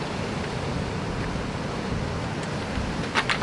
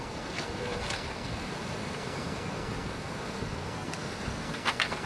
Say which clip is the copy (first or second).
second